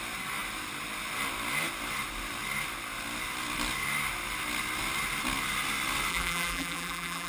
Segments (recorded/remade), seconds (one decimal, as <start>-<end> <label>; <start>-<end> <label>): 0.0-6.1 recorded; 6.1-7.3 remade